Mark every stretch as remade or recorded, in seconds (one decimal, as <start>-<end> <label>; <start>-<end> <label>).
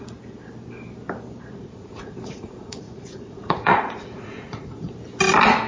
0.0-1.5 recorded; 1.5-4.9 remade; 4.9-5.7 recorded